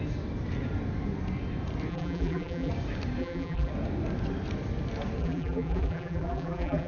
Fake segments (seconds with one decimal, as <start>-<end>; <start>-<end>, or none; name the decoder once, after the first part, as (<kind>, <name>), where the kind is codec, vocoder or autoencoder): 1.9-2.7 (vocoder, BigVGAN v2); 3.2-3.7; 5.2-6.9